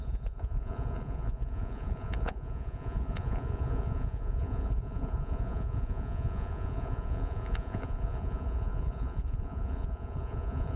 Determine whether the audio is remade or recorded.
remade